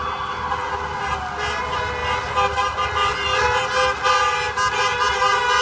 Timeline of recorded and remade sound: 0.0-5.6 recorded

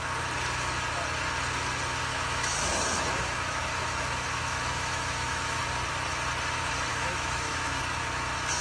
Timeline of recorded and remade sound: 0.0-2.1 recorded; 2.1-5.6 remade; 5.6-6.9 recorded; 6.9-7.8 remade; 7.8-8.6 recorded